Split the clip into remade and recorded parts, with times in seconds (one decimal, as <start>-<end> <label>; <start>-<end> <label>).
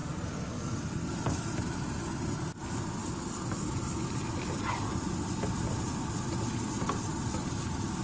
0.0-8.0 recorded